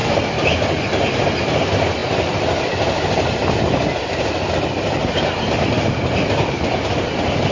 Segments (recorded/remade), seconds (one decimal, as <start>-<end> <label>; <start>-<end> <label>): 0.0-7.5 recorded